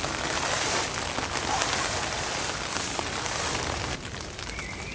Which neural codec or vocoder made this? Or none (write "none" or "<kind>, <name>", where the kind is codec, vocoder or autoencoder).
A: none